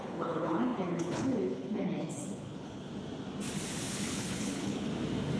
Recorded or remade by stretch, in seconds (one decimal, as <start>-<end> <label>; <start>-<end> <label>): 0.0-2.9 remade; 2.9-3.9 recorded; 3.9-4.9 remade; 4.9-5.4 recorded